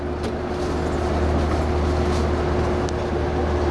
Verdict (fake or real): real